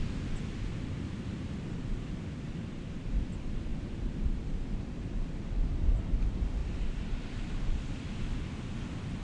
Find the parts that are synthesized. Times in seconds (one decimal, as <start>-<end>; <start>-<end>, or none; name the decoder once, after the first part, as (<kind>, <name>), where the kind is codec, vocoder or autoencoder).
none